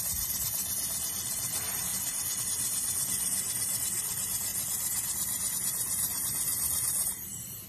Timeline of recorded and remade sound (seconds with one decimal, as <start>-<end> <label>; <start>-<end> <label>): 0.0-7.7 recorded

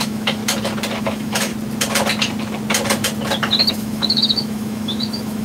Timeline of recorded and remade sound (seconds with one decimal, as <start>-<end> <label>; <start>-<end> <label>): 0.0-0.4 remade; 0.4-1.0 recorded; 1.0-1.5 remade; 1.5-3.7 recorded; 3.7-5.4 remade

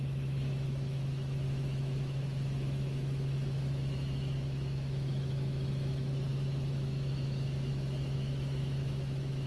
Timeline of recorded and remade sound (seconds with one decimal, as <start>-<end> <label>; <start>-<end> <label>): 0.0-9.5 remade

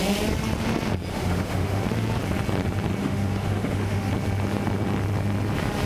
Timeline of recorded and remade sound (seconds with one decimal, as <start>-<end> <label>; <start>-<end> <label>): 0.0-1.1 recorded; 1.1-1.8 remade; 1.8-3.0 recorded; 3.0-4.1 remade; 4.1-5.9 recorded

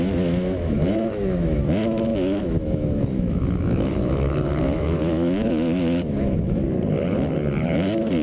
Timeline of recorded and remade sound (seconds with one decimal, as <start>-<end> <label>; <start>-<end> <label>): 0.0-6.6 remade; 6.6-7.6 recorded; 7.6-8.2 remade